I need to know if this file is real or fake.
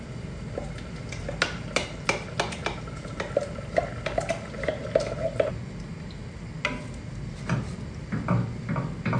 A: real